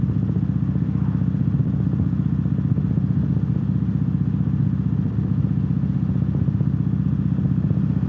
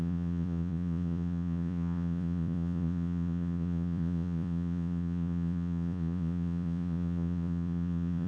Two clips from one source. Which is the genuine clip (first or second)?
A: first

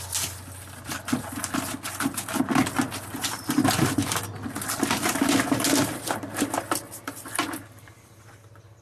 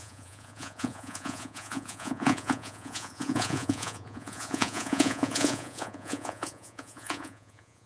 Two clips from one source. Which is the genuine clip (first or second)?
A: first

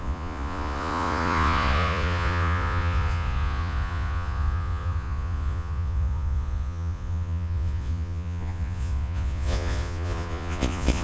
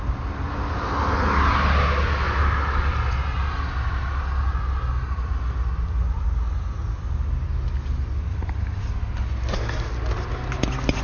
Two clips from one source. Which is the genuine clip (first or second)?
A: second